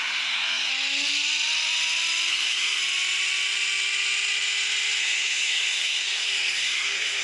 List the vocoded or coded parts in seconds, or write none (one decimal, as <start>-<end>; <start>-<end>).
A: 0.0-0.7; 2.3-2.8; 5.0-7.2